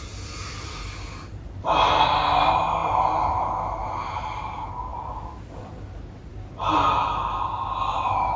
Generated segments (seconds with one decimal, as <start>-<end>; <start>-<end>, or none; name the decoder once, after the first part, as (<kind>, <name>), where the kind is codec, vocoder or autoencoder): none